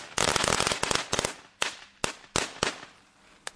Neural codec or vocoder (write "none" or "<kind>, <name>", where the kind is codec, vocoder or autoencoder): none